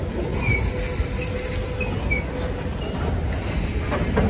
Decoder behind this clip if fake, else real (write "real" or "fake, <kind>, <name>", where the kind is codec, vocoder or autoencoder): real